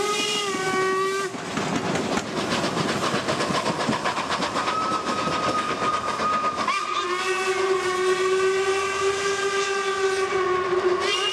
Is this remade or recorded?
recorded